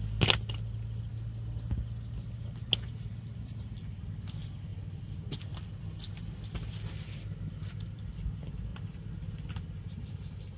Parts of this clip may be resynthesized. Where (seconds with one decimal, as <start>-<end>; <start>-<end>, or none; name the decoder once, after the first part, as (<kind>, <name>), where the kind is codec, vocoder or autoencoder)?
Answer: 4.7-5.2 (vocoder, BigVGAN v2)